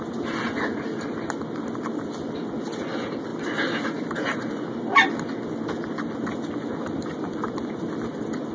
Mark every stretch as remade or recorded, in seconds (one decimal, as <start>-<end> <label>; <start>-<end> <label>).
0.0-8.5 recorded